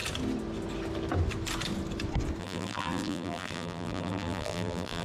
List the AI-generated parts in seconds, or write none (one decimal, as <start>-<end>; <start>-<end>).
2.4-5.0